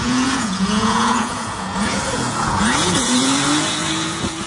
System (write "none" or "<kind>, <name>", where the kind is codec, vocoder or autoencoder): vocoder, Vocos